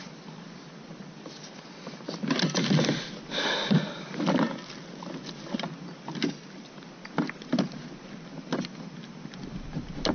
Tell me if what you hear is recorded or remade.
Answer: recorded